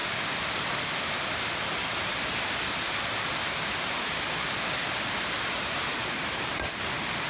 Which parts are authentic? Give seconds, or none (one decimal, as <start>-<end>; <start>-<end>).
0.0-7.3